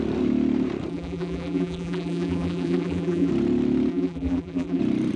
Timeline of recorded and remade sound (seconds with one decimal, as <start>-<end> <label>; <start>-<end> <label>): 0.0-0.9 recorded; 0.9-3.3 remade; 3.3-3.9 recorded; 3.9-4.8 remade; 4.8-5.2 recorded